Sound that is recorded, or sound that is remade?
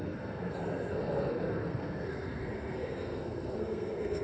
remade